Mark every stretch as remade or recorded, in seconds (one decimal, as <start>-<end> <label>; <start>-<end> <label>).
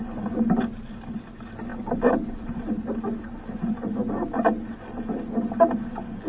0.0-6.3 recorded